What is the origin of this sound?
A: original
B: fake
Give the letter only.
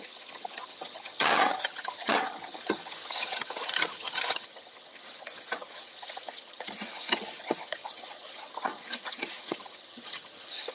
B